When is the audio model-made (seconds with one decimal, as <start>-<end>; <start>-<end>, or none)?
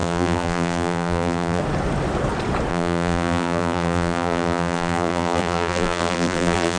0.0-1.6; 2.7-6.8